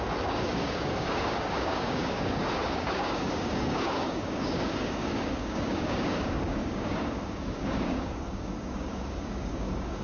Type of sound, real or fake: fake